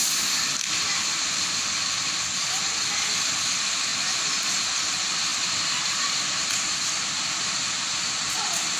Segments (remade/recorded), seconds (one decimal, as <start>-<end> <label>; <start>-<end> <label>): 0.0-8.8 recorded